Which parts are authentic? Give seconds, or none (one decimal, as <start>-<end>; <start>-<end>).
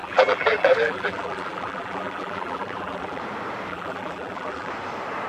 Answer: 3.2-3.7; 4.7-5.3